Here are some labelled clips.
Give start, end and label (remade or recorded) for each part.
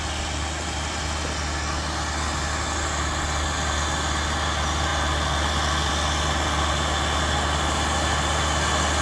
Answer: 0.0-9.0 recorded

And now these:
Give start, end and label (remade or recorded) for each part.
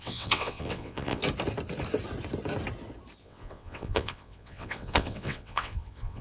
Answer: 0.0-1.2 remade; 1.2-3.2 recorded; 3.2-6.2 remade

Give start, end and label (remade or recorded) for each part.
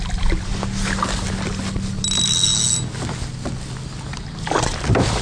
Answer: 0.0-5.2 recorded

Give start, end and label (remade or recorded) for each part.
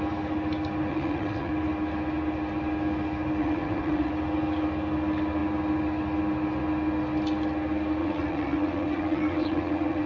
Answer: 0.0-0.9 recorded; 0.9-1.5 remade; 1.5-3.4 recorded; 3.4-4.1 remade; 4.1-8.0 recorded; 8.0-10.1 remade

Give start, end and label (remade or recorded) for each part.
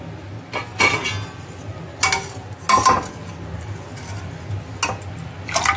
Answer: 0.0-5.8 recorded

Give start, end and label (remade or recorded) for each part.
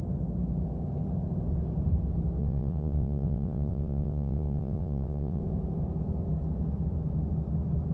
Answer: 0.0-2.4 recorded; 2.4-5.4 remade; 5.4-7.9 recorded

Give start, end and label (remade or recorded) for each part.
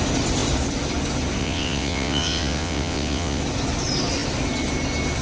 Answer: 0.0-1.4 recorded; 1.4-3.4 remade; 3.4-5.2 recorded